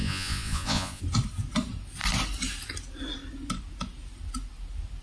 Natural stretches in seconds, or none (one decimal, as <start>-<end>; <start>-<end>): 1.0-5.0